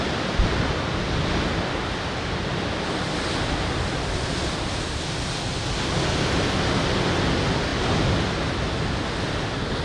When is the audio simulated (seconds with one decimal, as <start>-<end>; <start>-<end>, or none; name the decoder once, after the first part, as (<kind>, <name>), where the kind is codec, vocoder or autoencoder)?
none